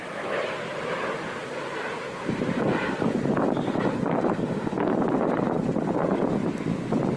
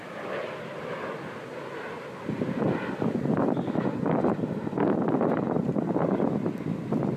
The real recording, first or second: second